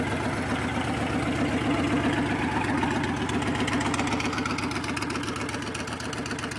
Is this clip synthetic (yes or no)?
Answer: no